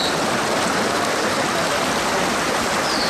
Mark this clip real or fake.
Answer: real